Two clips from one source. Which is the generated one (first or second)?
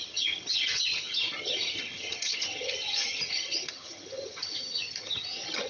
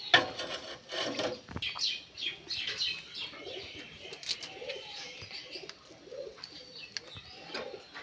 first